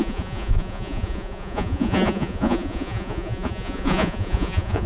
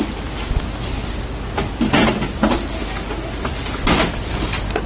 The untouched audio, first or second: second